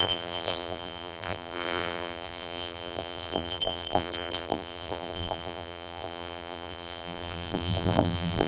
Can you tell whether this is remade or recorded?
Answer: remade